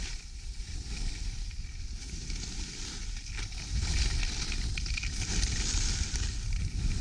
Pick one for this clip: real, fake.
real